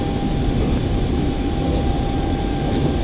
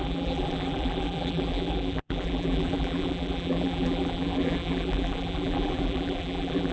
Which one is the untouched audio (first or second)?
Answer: first